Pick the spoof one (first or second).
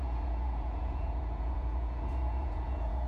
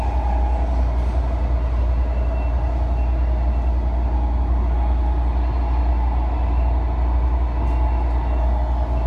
first